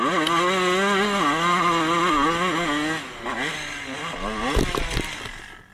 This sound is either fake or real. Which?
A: real